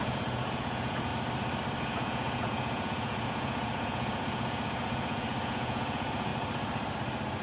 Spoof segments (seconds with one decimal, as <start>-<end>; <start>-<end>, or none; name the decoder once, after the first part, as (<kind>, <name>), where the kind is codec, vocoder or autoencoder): 0.0-1.1 (vocoder, Vocos); 1.8-6.3